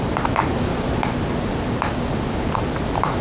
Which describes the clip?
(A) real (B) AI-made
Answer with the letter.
A